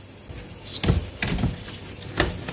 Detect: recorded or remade recorded